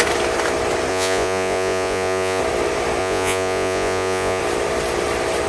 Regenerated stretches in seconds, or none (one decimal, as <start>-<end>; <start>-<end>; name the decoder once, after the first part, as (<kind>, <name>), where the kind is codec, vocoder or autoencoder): 0.9-2.4 (vocoder, Vocos); 3.0-4.4